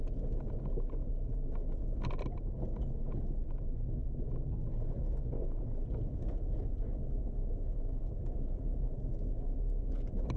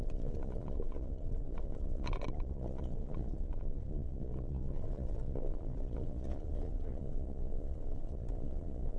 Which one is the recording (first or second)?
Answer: first